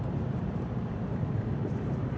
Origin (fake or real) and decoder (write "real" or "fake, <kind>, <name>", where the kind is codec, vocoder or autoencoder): fake, vocoder, BigVGAN v2